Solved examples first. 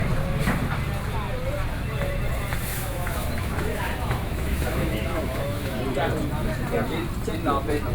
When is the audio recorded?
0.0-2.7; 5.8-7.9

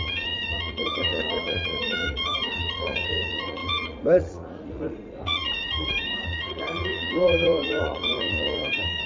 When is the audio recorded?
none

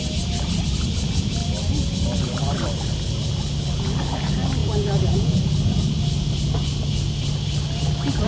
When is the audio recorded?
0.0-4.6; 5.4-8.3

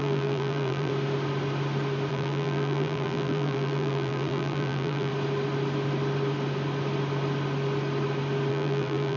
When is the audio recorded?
0.9-2.1; 5.1-8.5

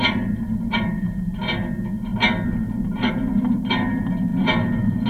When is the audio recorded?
0.0-5.1

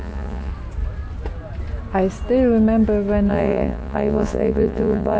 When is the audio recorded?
0.5-3.3

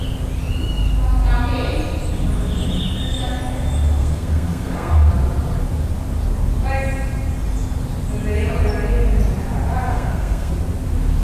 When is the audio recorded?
0.0-4.0; 5.1-9.9; 10.5-11.2